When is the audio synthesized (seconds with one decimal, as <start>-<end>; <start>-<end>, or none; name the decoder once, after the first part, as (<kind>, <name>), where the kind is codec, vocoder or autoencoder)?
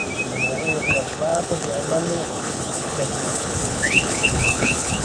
0.9-5.0 (codec, HILCodec)